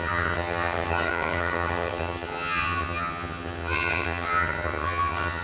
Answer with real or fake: fake